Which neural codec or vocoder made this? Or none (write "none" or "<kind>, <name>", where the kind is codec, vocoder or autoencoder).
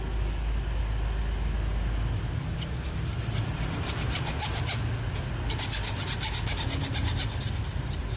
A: none